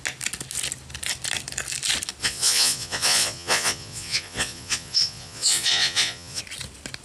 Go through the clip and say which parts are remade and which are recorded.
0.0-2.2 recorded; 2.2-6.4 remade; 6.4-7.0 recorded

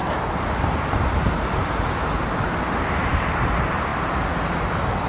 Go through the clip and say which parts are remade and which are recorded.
0.0-5.1 recorded

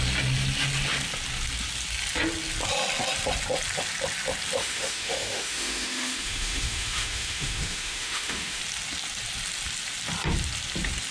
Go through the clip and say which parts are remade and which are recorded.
0.0-4.6 recorded; 4.6-8.6 remade; 8.6-11.1 recorded

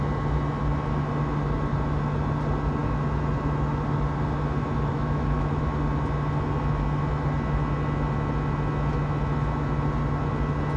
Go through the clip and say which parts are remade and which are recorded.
0.0-4.9 recorded; 4.9-5.6 remade; 5.6-10.8 recorded

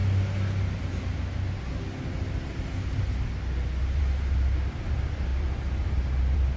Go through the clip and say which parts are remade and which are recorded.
0.0-5.3 recorded; 5.3-6.6 remade